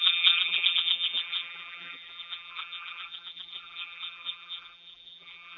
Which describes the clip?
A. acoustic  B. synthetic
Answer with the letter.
B